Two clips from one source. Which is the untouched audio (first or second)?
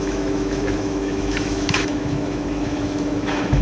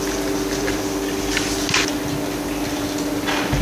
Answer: second